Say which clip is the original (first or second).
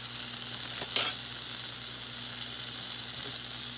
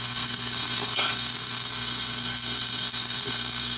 first